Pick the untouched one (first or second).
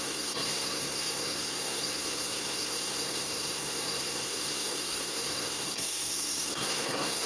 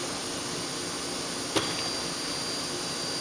second